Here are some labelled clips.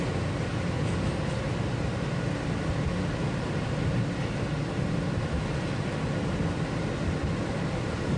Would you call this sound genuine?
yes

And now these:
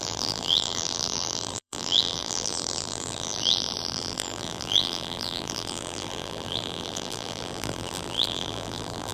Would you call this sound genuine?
no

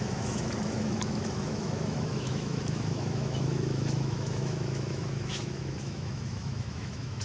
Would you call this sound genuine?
no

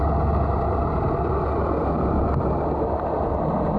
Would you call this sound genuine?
yes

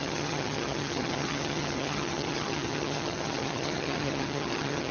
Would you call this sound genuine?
no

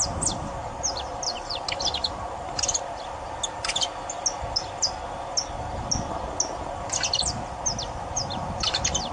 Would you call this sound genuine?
yes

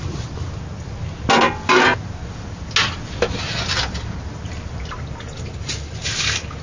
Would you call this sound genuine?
yes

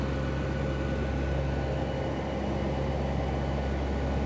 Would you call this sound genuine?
yes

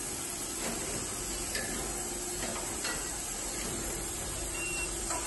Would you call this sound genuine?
yes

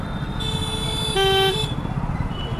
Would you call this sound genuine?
yes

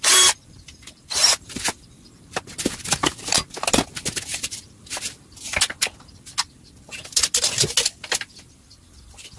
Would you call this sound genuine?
yes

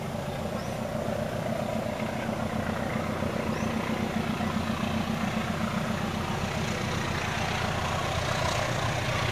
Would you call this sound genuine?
yes